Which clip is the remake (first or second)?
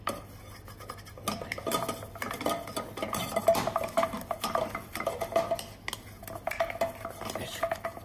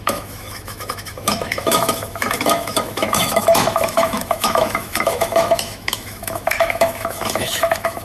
second